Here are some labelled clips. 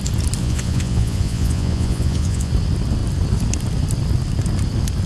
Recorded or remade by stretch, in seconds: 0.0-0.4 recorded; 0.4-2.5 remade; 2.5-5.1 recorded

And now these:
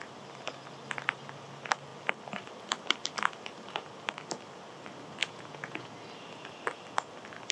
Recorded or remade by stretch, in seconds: 0.0-5.2 recorded; 5.2-5.9 remade; 5.9-7.5 recorded

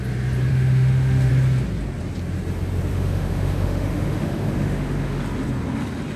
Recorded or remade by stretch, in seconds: 0.0-0.5 recorded; 0.5-1.3 remade; 1.3-2.9 recorded; 2.9-5.2 remade; 5.2-6.2 recorded

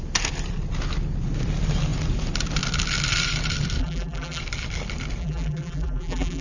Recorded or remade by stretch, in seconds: 0.0-3.8 recorded; 3.8-4.4 remade; 4.4-5.2 recorded; 5.2-6.4 remade

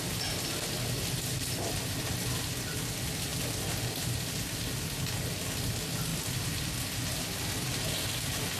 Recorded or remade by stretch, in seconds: 0.0-8.6 recorded

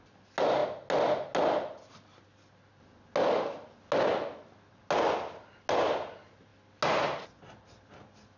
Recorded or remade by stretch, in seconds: 0.0-8.4 recorded

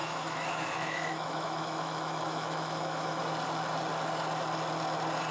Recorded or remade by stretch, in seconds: 0.0-3.2 remade; 3.2-5.3 recorded